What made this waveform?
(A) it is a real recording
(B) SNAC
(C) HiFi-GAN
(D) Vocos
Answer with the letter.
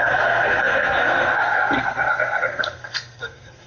B